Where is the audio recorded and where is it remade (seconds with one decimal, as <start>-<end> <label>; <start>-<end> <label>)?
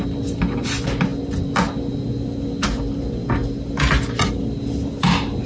0.0-5.5 recorded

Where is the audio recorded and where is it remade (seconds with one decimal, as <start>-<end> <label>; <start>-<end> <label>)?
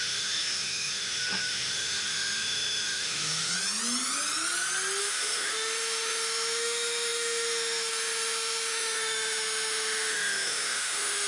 0.0-3.5 remade; 3.5-5.0 recorded; 5.0-11.3 remade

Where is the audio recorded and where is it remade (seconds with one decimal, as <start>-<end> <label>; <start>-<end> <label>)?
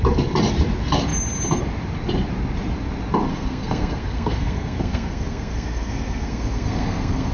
0.0-3.3 recorded; 3.3-7.3 remade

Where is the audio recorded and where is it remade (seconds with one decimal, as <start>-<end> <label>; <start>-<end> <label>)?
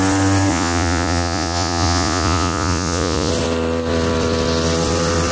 0.0-0.5 recorded; 0.5-3.3 remade; 3.3-5.3 recorded